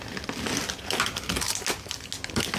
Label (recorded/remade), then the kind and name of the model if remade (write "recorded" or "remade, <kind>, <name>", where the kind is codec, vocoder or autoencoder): recorded